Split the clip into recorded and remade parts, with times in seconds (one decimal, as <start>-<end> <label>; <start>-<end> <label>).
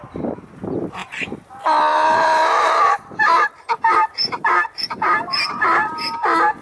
0.0-1.9 recorded; 1.9-5.9 remade; 5.9-6.6 recorded